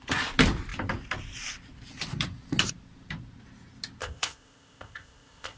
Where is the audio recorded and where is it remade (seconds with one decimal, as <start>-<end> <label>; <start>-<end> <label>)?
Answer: 0.0-4.0 recorded; 4.0-5.6 remade